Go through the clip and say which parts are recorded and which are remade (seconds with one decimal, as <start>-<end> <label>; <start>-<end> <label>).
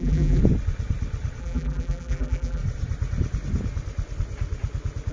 0.0-0.4 remade; 0.4-1.4 recorded; 1.4-2.6 remade; 2.6-5.1 recorded